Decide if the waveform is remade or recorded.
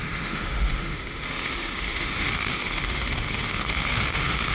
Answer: remade